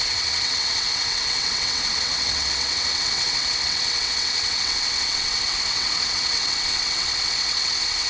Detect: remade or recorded remade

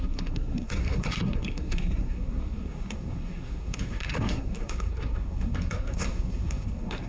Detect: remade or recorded remade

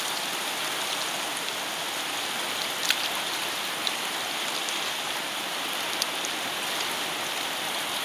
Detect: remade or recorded recorded